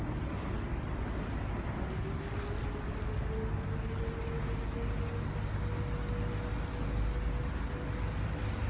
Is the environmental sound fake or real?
real